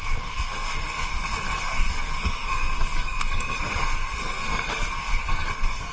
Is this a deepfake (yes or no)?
yes